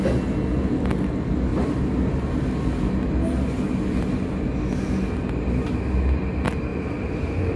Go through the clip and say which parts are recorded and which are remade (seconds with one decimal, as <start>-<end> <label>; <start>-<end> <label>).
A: 0.0-1.5 recorded; 1.5-2.4 remade; 2.4-6.7 recorded; 6.7-7.6 remade